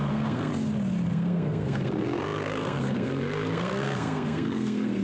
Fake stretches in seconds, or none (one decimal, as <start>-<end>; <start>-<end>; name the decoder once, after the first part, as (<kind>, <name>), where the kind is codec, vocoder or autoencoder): 0.0-0.5 (codec, SNAC); 1.1-5.0